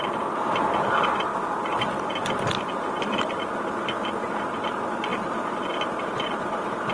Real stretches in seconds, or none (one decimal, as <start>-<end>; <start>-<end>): 0.0-1.3; 2.0-6.9